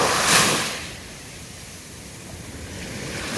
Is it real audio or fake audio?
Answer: fake